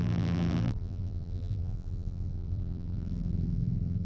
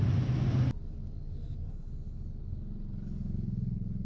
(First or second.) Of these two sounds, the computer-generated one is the first